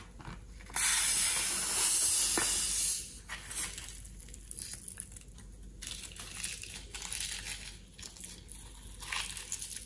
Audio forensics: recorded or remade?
recorded